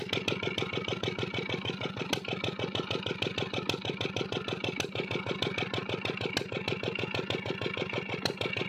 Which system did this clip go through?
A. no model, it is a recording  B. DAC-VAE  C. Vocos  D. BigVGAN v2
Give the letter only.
A